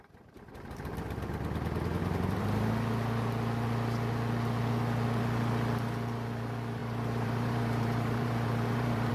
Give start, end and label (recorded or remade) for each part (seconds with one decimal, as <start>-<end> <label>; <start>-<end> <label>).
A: 0.0-2.0 recorded; 2.0-2.7 remade; 2.7-6.8 recorded; 6.8-9.1 remade